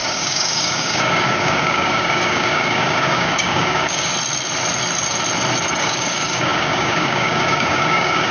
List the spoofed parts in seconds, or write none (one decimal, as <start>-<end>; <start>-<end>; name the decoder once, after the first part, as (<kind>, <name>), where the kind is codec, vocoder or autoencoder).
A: 0.0-4.1 (codec, DAC); 5.8-8.3